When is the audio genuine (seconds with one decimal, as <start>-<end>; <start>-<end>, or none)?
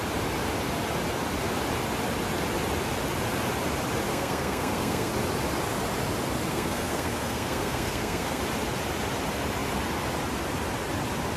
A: 0.0-4.1; 5.1-6.5; 8.4-11.4